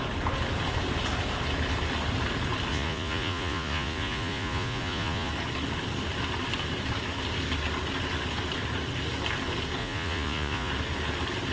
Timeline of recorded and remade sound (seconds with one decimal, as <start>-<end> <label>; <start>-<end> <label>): 0.0-2.7 recorded; 2.7-5.3 remade; 5.3-9.8 recorded; 9.8-10.7 remade; 10.7-11.5 recorded